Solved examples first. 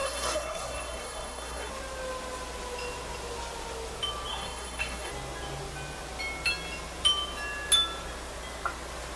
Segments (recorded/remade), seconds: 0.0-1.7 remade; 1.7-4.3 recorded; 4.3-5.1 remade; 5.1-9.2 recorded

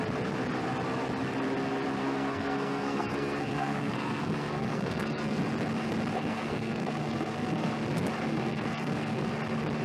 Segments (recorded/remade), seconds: 0.0-2.0 recorded; 2.0-5.4 remade; 5.4-6.1 recorded; 6.1-7.7 remade; 7.7-8.3 recorded; 8.3-9.3 remade; 9.3-9.8 recorded